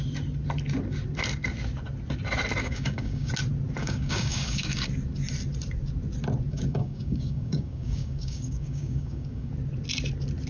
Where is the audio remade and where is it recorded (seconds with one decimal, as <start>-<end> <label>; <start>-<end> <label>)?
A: 0.0-2.6 recorded; 2.6-3.3 remade; 3.3-3.8 recorded; 3.8-4.9 remade; 4.9-6.5 recorded; 6.5-9.5 remade; 9.5-10.5 recorded